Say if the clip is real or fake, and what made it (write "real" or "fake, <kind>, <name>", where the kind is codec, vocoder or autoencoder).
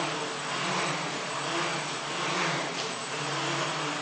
real